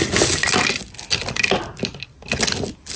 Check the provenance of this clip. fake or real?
real